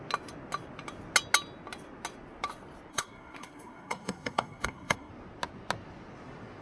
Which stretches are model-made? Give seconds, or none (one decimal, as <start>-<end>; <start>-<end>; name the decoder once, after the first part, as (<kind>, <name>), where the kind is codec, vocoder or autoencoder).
2.9-5.1 (codec, SNAC)